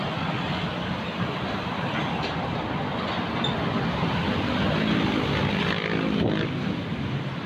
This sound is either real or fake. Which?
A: real